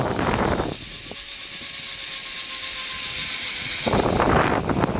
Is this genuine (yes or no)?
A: yes